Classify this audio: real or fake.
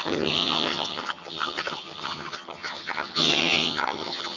fake